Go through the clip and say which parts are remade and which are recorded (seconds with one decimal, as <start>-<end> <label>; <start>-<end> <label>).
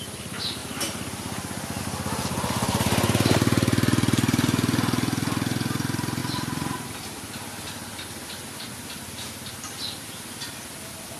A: 0.0-11.2 recorded